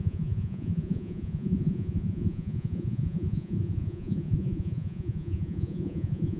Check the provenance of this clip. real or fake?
fake